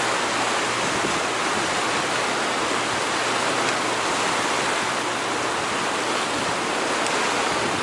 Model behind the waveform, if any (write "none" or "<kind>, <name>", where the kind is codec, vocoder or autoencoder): none